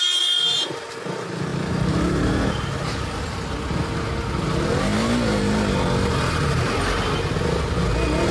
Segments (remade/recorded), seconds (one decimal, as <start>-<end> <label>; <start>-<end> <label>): 0.0-8.3 recorded